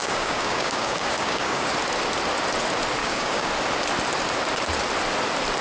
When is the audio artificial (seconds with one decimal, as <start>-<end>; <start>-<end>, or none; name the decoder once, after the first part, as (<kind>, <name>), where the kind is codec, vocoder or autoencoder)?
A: 0.0-1.7 (codec, DAC); 3.0-3.5